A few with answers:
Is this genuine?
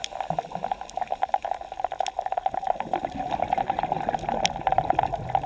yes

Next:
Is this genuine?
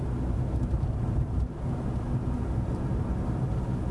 yes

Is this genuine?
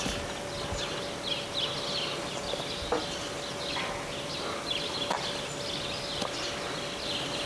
yes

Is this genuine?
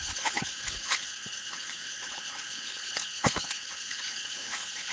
no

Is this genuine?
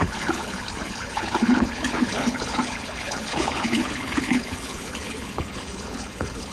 no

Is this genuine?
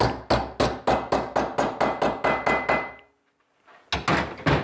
yes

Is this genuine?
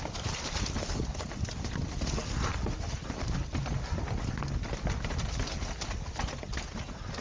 yes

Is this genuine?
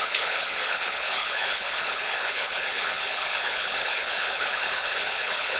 no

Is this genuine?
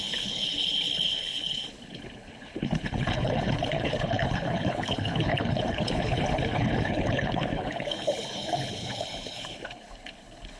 no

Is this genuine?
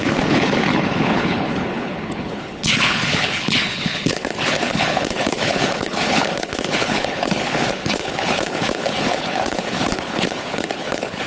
no